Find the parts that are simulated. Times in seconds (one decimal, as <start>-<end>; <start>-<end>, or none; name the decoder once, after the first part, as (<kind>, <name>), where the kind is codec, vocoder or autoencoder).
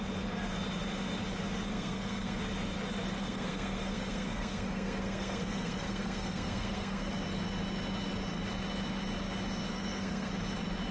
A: 1.7-2.4 (codec, SNAC); 3.2-7.1; 9.7-10.3